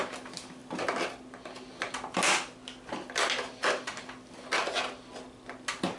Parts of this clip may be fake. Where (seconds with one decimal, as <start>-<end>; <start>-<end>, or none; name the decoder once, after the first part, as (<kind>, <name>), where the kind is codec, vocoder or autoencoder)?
none